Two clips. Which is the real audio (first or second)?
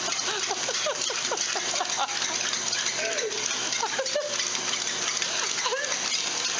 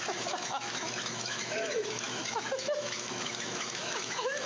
first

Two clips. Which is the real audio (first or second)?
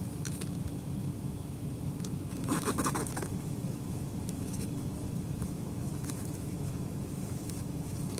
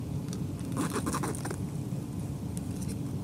second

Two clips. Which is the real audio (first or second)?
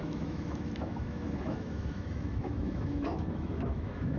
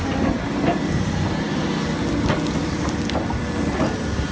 second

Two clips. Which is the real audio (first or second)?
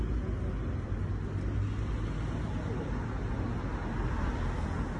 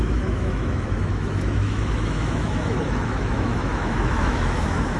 first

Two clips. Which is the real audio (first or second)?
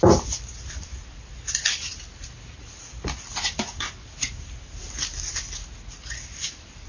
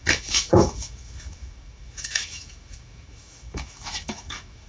first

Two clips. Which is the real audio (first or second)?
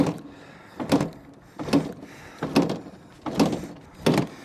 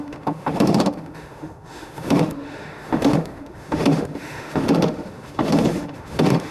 first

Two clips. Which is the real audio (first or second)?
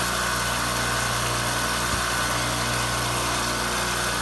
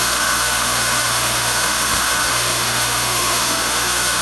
first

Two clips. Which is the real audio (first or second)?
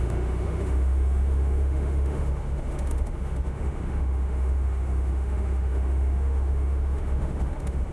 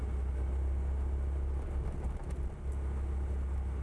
second